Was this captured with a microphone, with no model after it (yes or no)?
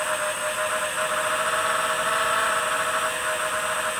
yes